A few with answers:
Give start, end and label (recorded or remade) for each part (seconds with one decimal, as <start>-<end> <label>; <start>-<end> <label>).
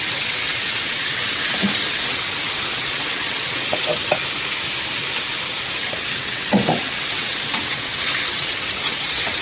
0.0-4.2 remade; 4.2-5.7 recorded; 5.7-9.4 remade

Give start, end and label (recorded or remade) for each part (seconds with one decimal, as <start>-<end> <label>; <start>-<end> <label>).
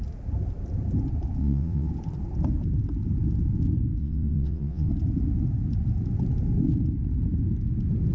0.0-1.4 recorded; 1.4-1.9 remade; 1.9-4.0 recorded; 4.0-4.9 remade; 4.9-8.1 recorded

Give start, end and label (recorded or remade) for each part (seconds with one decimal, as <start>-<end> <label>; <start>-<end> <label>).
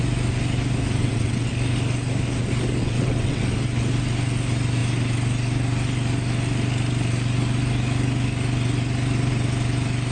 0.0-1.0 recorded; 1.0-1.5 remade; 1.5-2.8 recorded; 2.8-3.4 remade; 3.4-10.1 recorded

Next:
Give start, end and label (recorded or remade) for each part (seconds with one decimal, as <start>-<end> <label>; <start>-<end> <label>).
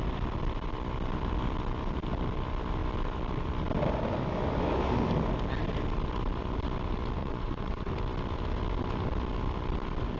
0.0-7.2 recorded; 7.2-7.9 remade; 7.9-10.2 recorded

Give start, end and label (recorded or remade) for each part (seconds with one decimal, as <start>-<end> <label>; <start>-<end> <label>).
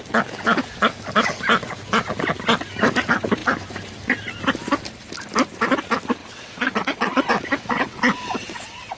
0.0-6.2 recorded; 6.2-9.0 remade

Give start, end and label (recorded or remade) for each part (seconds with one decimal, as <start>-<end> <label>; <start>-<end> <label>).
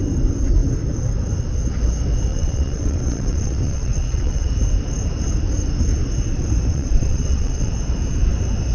0.0-2.3 recorded; 2.3-4.5 remade; 4.5-6.7 recorded; 6.7-7.7 remade; 7.7-8.7 recorded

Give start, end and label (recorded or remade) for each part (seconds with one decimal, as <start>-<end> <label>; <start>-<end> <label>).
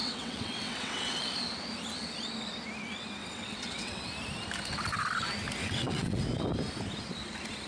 0.0-1.2 remade; 1.2-3.2 recorded; 3.2-4.1 remade; 4.1-5.6 recorded; 5.6-6.2 remade; 6.2-7.7 recorded